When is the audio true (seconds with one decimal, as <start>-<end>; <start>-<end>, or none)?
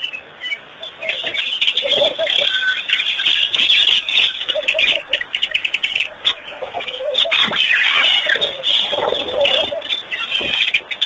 0.0-3.3; 7.5-11.1